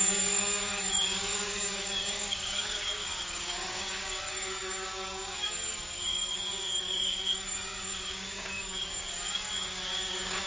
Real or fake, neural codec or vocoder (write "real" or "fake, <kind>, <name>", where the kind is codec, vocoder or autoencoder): fake, codec, DAC